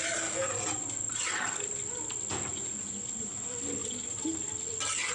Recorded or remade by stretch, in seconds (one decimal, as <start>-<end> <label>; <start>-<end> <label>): 0.0-2.5 recorded; 2.5-3.3 remade; 3.3-5.1 recorded